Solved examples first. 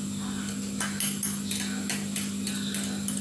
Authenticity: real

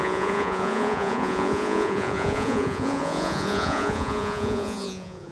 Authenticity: fake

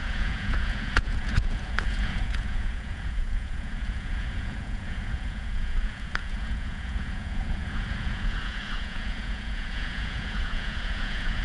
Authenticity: fake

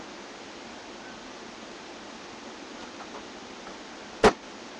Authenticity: real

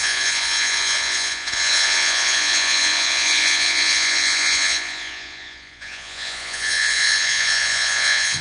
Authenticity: fake